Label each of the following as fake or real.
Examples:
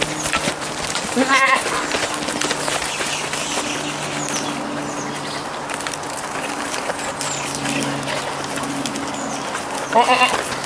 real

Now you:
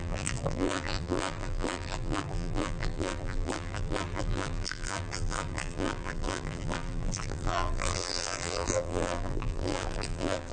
fake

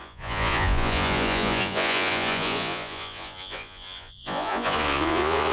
fake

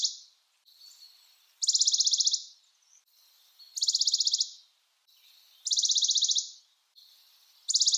real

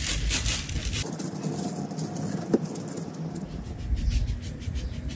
real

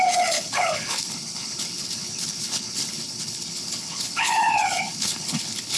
fake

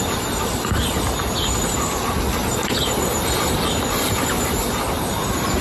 real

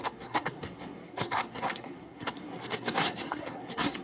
fake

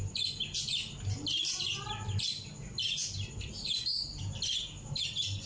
real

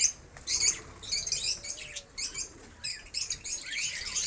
real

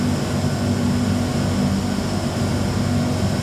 real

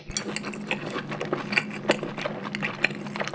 real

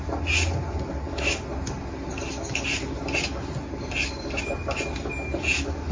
real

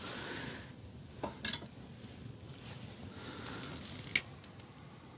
real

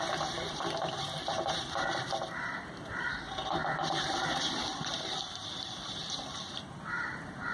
fake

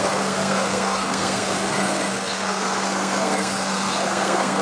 fake